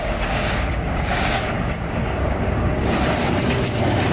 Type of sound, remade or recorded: remade